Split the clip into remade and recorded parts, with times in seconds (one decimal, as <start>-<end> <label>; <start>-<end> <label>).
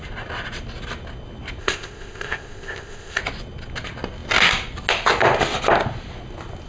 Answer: 0.0-1.6 recorded; 1.6-3.2 remade; 3.2-6.7 recorded